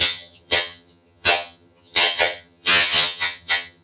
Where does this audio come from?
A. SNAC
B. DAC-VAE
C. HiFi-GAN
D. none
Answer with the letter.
C